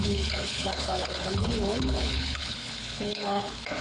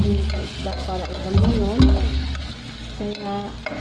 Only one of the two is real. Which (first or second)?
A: second